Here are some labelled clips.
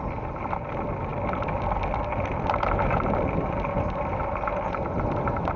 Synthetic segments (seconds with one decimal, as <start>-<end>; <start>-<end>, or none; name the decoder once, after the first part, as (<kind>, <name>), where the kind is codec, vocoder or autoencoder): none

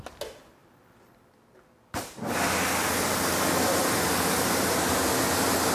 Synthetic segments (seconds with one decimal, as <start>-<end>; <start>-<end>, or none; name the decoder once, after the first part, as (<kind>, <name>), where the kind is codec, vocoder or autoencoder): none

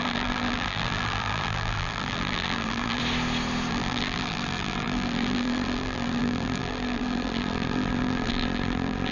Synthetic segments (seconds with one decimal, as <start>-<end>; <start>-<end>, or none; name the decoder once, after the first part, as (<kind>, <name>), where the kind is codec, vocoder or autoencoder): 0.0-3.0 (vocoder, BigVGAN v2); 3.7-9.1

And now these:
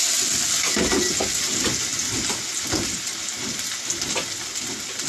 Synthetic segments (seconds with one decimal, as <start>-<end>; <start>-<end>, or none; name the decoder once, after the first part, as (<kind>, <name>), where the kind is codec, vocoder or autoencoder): none

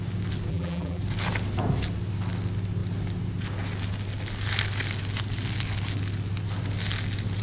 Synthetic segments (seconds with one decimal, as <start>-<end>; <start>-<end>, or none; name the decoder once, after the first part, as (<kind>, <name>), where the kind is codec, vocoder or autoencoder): 0.5-1.0 (vocoder, BigVGAN v2)

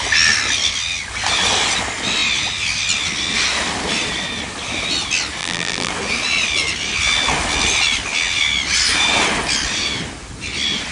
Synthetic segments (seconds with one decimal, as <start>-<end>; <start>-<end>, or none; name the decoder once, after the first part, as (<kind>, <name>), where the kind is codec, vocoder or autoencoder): 5.4-5.9 (vocoder, BigVGAN v2)